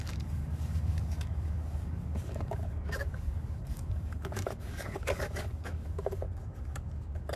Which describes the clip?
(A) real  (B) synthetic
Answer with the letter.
B